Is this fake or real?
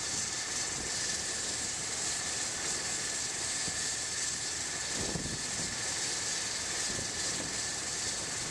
real